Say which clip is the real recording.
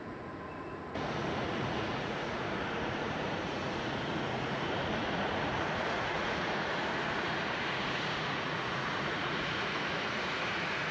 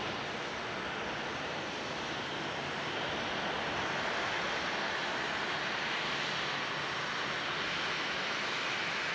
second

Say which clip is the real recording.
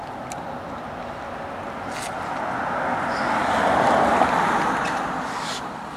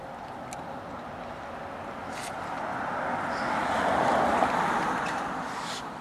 first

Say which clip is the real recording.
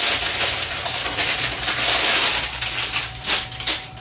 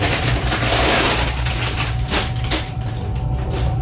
first